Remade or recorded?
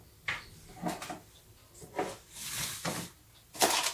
recorded